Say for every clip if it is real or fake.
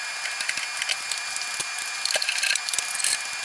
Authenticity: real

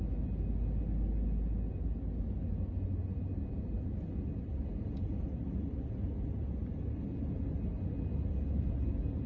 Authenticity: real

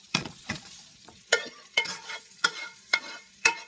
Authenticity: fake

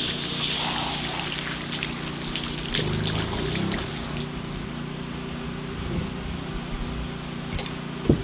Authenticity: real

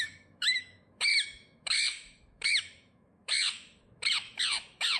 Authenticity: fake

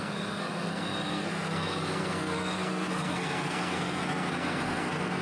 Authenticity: fake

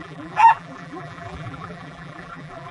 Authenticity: fake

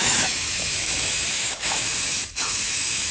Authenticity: fake